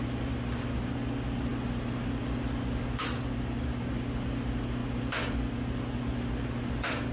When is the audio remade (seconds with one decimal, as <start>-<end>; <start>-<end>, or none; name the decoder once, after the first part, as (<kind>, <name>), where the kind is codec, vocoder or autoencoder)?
none